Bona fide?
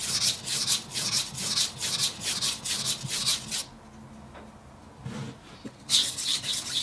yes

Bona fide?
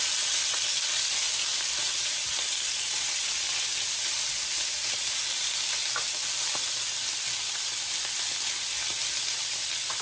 yes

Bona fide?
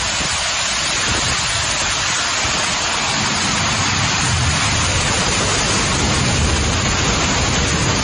yes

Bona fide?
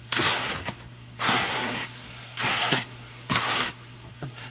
no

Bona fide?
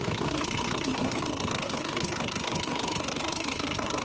no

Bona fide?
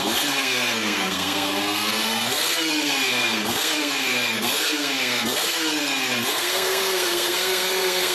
no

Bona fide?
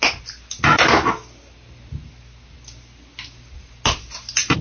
yes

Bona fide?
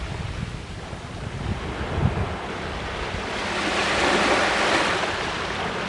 yes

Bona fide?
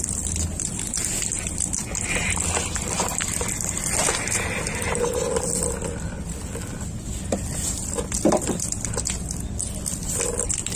yes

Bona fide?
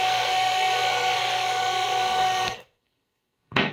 no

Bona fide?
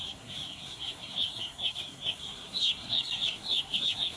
no